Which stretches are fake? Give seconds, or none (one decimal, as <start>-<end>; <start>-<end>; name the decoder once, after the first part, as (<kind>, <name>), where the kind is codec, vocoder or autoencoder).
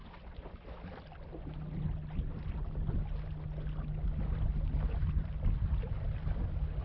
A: none